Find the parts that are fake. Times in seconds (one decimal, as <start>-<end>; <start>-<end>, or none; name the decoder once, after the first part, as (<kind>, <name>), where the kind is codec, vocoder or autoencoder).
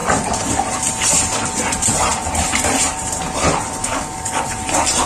3.8-4.4 (codec, DAC)